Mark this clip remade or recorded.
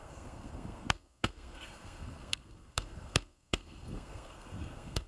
remade